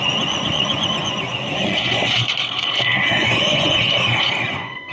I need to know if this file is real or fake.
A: fake